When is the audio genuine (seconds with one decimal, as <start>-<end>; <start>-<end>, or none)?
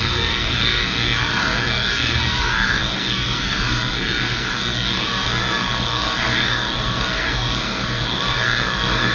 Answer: none